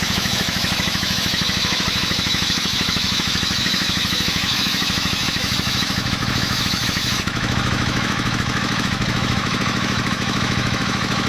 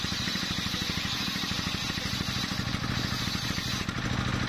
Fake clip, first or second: first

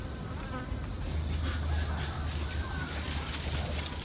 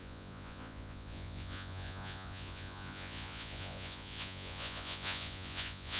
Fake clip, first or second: second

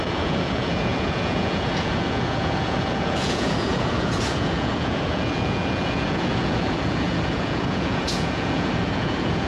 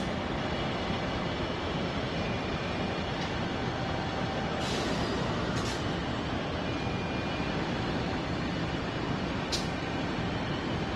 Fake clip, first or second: first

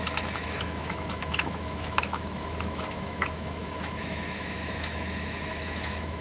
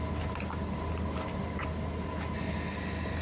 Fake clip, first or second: first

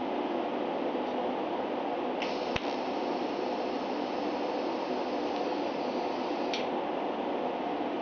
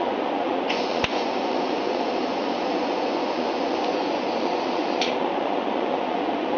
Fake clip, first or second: second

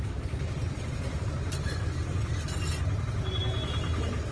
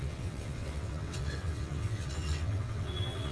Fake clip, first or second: second